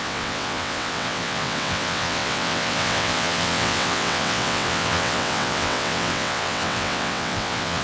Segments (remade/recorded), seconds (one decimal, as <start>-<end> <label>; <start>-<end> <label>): 0.0-7.8 remade